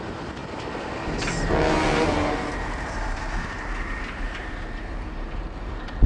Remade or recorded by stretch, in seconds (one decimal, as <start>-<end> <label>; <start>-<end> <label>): 0.0-0.4 remade; 0.4-4.1 recorded; 4.1-6.1 remade